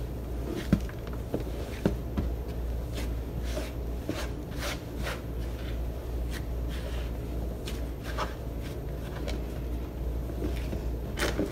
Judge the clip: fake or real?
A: real